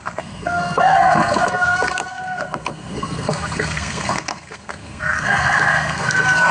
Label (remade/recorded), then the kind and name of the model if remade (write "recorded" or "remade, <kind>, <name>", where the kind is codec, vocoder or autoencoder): remade, codec, SNAC